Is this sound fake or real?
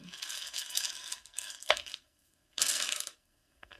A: fake